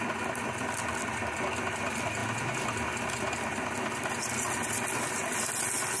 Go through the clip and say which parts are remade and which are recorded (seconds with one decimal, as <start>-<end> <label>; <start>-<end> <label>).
0.0-6.0 recorded